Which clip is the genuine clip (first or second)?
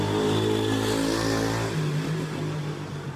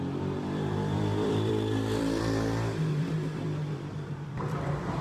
first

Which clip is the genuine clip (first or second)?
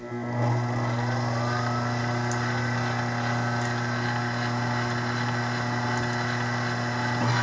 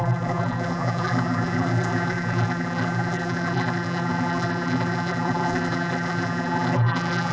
first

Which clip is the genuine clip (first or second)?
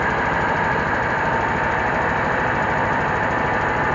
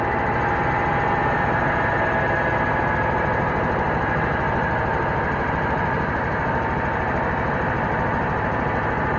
second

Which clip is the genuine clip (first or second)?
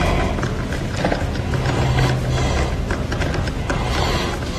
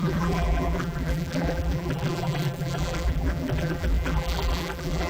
first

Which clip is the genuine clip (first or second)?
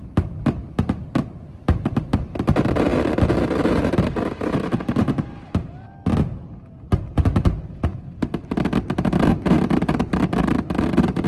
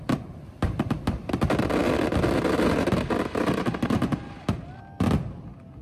first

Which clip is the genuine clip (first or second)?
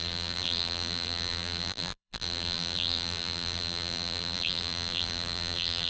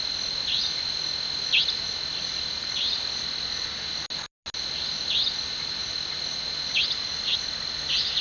second